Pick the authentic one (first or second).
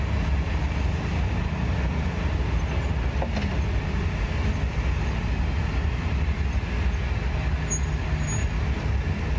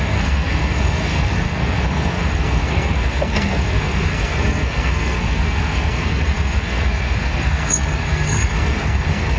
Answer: first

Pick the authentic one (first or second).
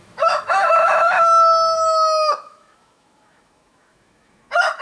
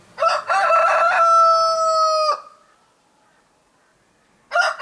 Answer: second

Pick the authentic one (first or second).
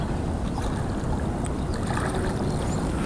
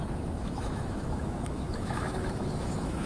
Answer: first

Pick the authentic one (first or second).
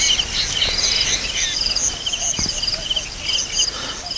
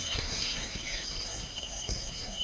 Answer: first